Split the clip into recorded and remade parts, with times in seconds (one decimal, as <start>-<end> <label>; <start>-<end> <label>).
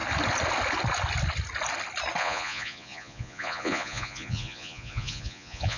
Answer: 0.0-2.2 recorded; 2.2-5.8 remade